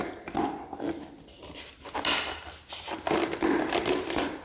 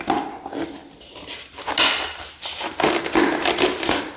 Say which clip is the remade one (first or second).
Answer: first